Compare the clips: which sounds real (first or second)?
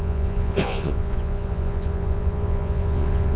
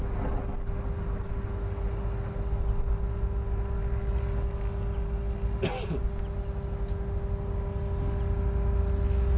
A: second